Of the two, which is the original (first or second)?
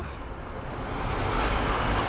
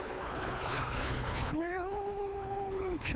first